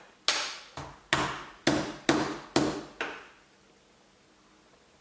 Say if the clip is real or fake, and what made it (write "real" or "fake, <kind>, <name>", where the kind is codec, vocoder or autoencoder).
real